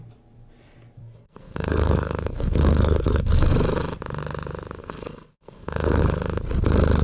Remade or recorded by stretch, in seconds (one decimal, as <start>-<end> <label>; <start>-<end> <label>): 0.0-1.0 recorded; 1.0-3.5 remade; 3.5-4.8 recorded; 4.8-6.0 remade; 6.0-7.0 recorded